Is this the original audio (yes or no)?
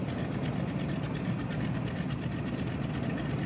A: yes